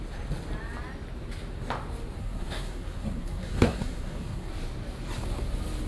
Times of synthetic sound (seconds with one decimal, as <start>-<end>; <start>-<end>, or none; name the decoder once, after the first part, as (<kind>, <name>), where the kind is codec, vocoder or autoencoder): 2.2-4.5 (codec, SNAC)